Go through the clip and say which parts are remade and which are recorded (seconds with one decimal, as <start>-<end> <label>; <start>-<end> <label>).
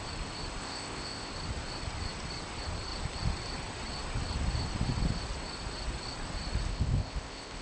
0.0-0.6 recorded; 0.6-1.3 remade; 1.3-6.7 recorded; 6.7-7.6 remade